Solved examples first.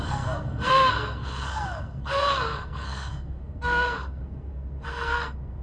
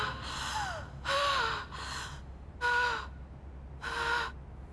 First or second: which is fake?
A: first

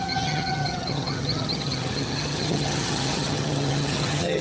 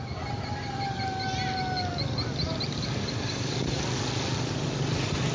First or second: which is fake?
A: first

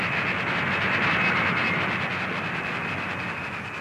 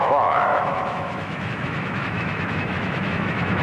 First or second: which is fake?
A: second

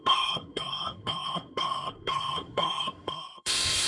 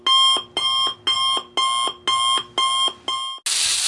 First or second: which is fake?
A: first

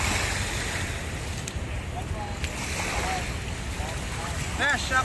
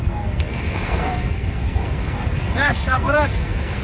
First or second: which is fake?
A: second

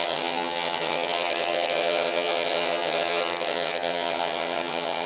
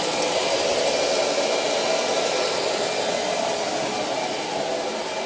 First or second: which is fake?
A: first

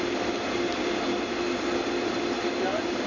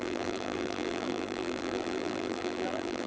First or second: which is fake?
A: second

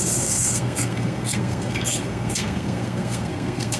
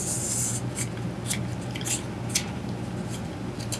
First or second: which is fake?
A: first